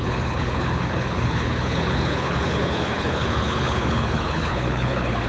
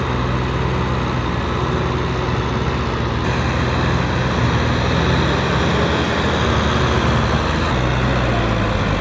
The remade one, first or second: first